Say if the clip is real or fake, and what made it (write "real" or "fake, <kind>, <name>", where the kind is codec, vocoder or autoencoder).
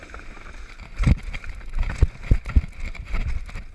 real